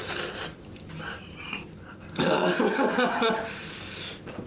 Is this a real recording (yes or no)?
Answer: yes